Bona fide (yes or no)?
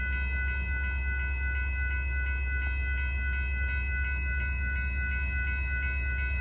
yes